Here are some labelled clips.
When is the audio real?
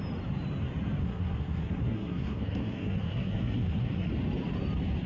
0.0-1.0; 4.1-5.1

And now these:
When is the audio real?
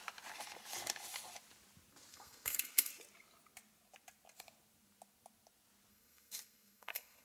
0.0-2.1; 2.9-5.9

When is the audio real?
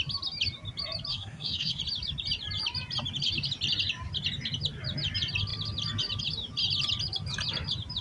0.0-1.1; 1.8-8.0